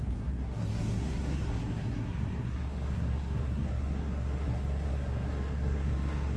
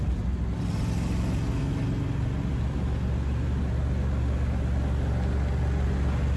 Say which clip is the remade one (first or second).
first